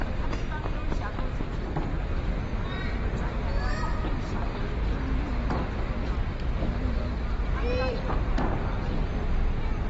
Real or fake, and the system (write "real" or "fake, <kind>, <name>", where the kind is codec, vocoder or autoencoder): real